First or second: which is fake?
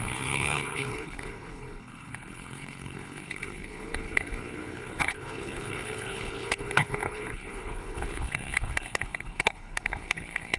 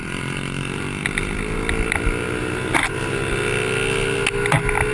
first